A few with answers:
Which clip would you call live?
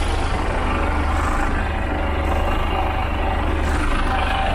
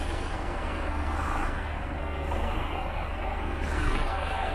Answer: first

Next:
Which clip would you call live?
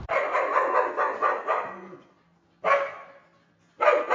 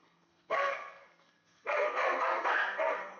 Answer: first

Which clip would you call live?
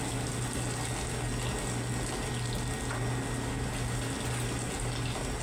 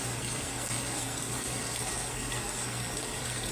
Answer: first